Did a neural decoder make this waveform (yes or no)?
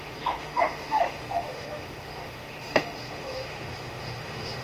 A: yes